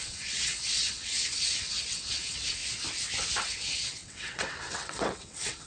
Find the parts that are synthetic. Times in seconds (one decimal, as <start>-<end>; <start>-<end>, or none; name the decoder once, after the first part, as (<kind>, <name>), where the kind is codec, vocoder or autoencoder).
0.0-2.6 (vocoder, WaveNeXt); 3.4-5.7